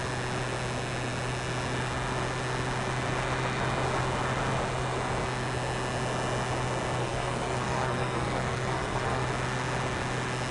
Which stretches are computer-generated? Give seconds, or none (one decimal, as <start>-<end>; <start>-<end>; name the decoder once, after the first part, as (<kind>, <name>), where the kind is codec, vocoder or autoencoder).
7.0-9.2 (codec, SNAC)